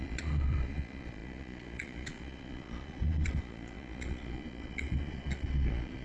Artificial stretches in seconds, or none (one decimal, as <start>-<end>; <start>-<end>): 0.0-6.0